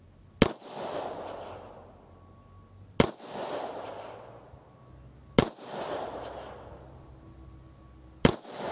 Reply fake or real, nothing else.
real